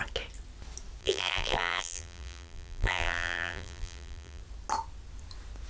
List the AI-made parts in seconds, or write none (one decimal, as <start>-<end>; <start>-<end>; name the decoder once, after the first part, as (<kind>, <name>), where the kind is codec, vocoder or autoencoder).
1.0-4.4 (vocoder, BigVGAN v2)